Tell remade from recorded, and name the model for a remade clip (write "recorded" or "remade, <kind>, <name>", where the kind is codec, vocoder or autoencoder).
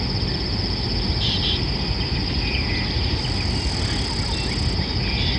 recorded